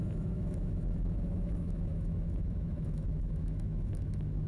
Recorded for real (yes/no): no